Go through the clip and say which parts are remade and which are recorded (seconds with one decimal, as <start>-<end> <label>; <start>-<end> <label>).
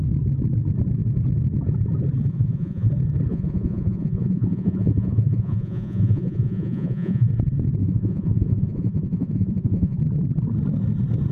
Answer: 0.0-2.3 recorded; 2.3-2.9 remade; 2.9-3.3 recorded; 3.3-7.3 remade; 7.3-7.8 recorded; 7.8-10.0 remade; 10.0-11.3 recorded